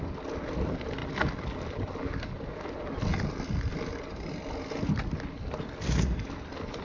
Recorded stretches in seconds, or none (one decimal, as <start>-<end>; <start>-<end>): 0.0-6.8